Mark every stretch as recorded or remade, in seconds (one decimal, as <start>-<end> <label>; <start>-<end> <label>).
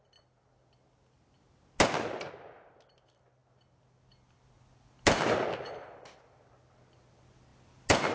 0.0-8.1 recorded